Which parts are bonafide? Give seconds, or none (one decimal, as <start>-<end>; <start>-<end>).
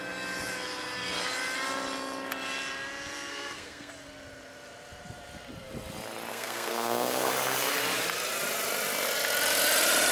0.0-3.3; 3.9-6.3; 7.3-10.1